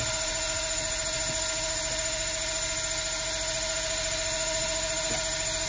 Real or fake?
real